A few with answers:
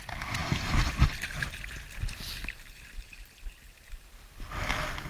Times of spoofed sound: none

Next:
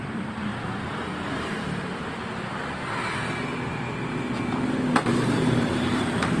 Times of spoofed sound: 0.0-0.5; 1.2-2.0; 4.4-6.4